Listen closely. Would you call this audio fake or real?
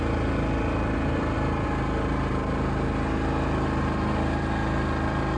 real